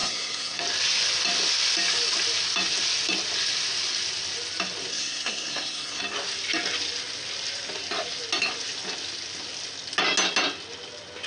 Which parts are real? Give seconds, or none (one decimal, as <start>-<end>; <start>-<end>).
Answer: 0.6-4.9; 6.0-11.3